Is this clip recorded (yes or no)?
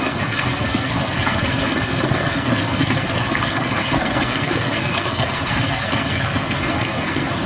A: no